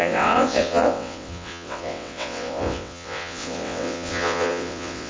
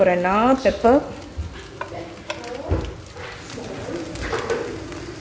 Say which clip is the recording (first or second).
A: second